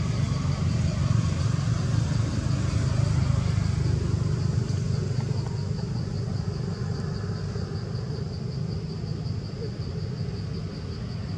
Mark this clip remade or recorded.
recorded